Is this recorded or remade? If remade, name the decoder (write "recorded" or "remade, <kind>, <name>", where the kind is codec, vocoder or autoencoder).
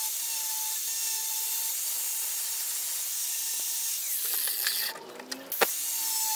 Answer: recorded